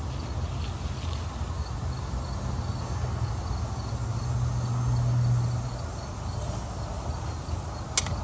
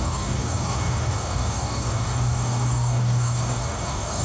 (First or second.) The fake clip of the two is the second